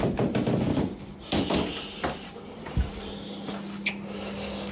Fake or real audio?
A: real